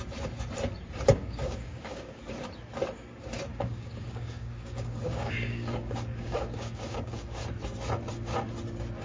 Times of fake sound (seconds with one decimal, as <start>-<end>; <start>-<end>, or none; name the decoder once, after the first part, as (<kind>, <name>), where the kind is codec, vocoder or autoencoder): 1.1-2.2 (codec, DAC); 3.5-7.4